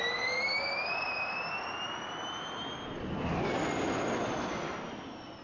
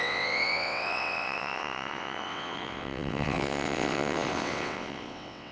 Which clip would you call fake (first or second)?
second